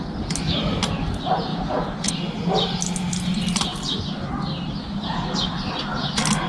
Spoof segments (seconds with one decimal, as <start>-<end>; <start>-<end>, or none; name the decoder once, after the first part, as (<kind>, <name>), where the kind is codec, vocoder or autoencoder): 1.5-2.1 (vocoder, Vocos)